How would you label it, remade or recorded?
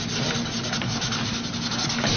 recorded